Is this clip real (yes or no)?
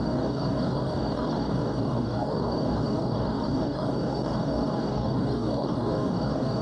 no